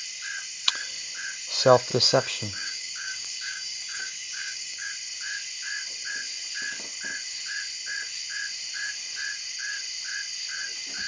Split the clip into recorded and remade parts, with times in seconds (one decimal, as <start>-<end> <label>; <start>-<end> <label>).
0.0-1.9 recorded; 1.9-4.9 remade; 4.9-11.1 recorded